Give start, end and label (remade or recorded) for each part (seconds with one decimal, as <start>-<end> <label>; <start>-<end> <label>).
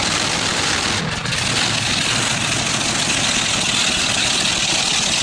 0.0-5.2 recorded